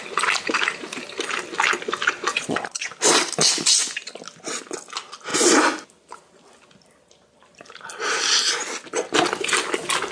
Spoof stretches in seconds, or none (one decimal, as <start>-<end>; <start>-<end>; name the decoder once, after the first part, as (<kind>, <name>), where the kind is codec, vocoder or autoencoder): 2.3-2.9 (vocoder, Vocos)